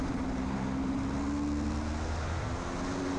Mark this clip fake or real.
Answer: real